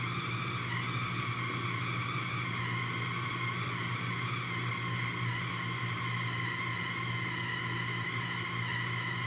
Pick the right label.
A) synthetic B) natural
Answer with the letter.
B